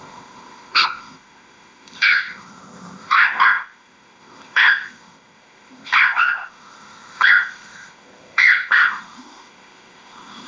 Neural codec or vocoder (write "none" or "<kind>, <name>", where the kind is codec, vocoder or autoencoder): codec, ZipCodec